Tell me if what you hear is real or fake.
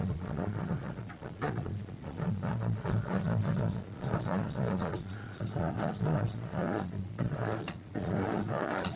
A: fake